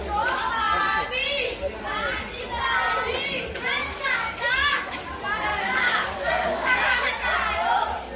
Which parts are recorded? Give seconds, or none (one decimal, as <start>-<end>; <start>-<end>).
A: 0.0-3.8; 5.0-5.5; 7.1-8.2